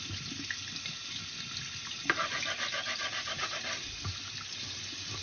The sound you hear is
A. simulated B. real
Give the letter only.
B